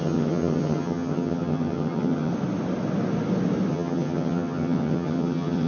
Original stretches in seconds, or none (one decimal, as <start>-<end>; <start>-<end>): 2.3-3.7